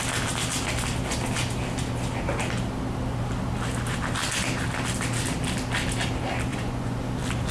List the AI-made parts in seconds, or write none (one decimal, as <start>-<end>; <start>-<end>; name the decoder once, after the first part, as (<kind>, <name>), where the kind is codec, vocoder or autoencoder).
6.5-7.0 (vocoder, Vocos)